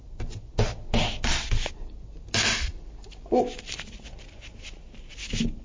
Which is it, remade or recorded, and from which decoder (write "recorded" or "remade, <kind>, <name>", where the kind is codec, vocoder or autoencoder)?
recorded